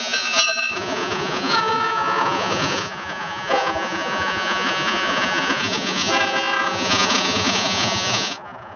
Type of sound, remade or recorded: remade